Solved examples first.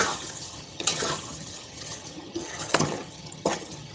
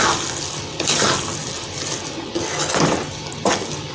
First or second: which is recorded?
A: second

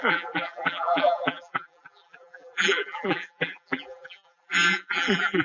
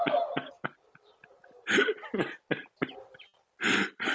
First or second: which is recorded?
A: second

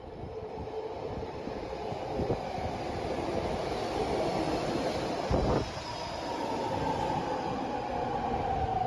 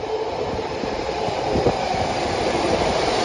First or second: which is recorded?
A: first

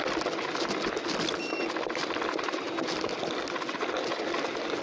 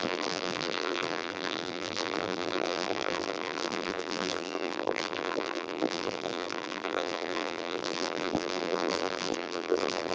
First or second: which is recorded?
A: first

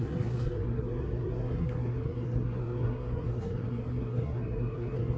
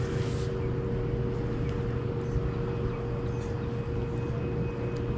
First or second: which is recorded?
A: second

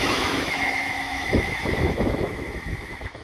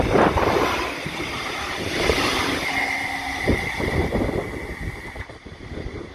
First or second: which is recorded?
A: second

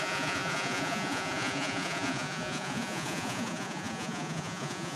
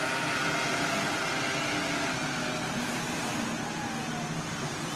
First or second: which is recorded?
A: second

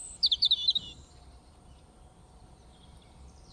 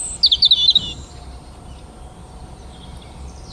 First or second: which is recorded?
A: second